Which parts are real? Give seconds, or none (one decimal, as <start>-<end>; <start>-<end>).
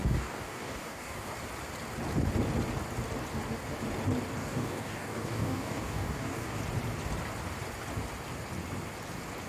1.3-4.4; 6.6-9.5